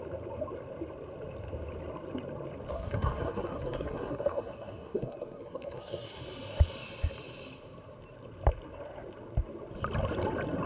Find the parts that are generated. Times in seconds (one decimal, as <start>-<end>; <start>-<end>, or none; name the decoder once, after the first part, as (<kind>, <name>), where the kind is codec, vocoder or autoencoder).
2.7-6.2 (codec, SNAC)